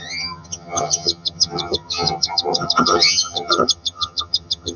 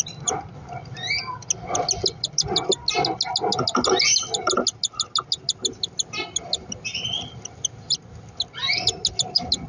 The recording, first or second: second